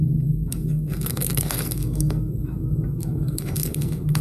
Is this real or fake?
fake